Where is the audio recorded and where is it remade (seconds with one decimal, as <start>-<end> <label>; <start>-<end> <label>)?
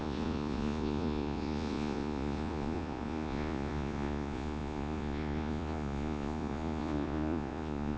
0.0-8.0 remade